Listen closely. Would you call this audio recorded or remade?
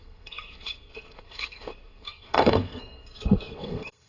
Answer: remade